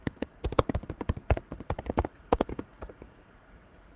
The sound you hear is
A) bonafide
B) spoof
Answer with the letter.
B